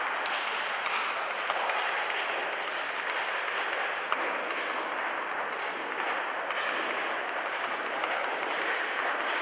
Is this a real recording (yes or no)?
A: yes